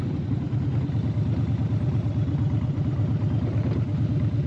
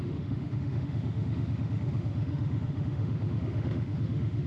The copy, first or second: second